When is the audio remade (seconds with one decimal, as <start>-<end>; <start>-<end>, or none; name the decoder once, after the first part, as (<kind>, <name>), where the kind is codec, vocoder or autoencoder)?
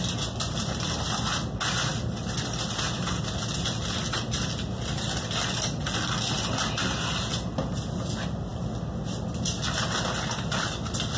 none